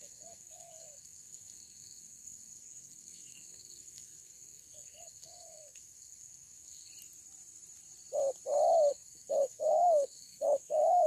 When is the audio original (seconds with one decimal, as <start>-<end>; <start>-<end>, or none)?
6.9-8.9